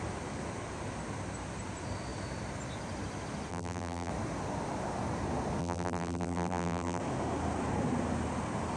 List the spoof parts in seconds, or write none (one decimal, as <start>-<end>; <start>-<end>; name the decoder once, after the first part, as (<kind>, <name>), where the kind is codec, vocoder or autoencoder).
3.5-4.1 (vocoder, BigVGAN v2); 5.6-7.0